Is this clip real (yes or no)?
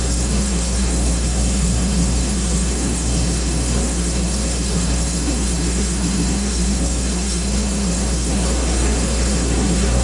no